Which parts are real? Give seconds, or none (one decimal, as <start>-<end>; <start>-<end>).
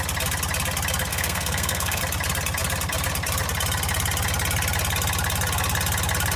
0.0-1.1; 2.0-6.4